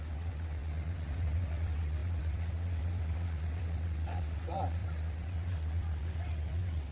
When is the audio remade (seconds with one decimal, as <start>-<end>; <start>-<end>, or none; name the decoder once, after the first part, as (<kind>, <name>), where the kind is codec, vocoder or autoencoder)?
0.0-6.9 (vocoder, WaveNeXt)